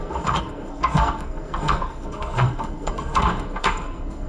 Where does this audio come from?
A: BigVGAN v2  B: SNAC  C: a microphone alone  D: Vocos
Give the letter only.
B